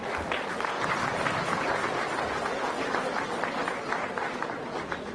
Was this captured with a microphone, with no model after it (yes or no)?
yes